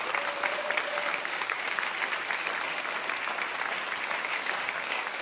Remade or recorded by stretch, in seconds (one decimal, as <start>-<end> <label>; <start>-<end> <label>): 0.0-1.1 recorded; 1.1-1.9 remade; 1.9-4.3 recorded; 4.3-5.2 remade